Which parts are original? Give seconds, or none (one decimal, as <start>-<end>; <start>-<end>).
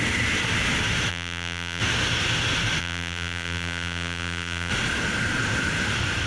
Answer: 0.0-1.1; 1.8-2.8; 4.7-6.3